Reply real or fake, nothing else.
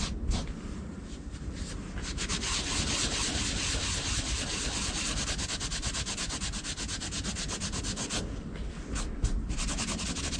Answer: real